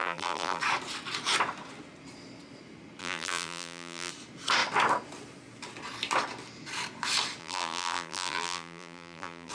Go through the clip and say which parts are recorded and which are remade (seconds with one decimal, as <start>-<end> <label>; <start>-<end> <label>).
0.0-0.6 remade; 0.6-3.0 recorded; 3.0-4.1 remade; 4.1-7.4 recorded; 7.4-9.5 remade